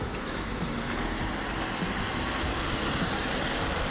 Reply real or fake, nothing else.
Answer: real